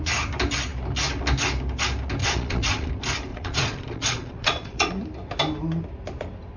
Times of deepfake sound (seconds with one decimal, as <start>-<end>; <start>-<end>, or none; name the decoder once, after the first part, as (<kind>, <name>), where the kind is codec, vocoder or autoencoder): 2.2-2.9 (vocoder, Vocos); 3.3-4.9